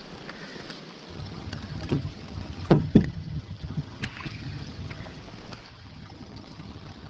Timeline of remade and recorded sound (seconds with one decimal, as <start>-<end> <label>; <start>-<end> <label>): 0.0-1.1 recorded; 1.1-5.2 remade; 5.2-5.7 recorded; 5.7-7.1 remade